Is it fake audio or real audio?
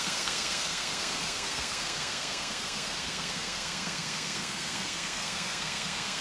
fake